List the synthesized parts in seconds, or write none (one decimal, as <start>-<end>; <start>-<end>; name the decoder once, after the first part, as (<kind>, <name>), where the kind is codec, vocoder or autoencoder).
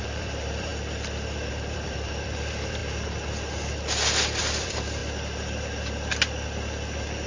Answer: 0.0-0.7 (vocoder, BigVGAN v2); 1.5-2.8; 4.4-5.0